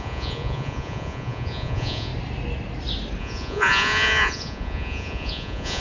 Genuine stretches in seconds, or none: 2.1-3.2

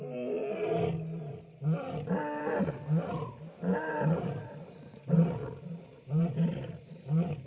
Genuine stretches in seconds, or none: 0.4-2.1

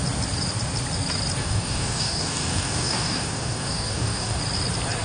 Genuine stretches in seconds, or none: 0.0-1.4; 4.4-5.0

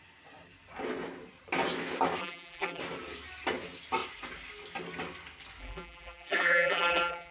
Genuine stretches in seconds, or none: 0.0-2.2; 2.8-5.6

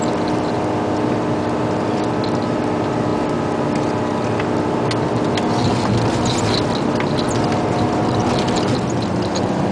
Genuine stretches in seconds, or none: 0.0-9.7

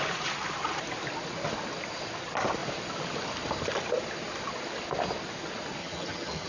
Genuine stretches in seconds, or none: 0.0-5.8

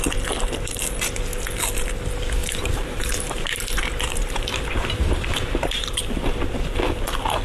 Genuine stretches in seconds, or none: 0.0-2.4; 6.0-7.4

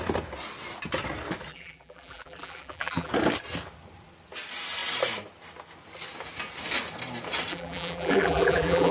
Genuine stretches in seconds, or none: 0.0-1.5; 3.1-7.5